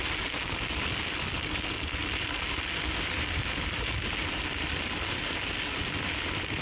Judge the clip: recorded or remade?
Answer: recorded